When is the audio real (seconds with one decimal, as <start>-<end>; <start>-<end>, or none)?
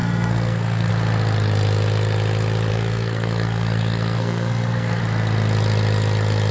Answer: 0.9-2.7; 5.0-6.5